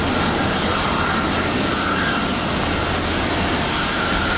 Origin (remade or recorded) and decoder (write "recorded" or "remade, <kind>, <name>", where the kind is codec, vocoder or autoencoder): recorded